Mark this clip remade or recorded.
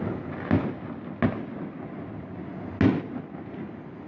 recorded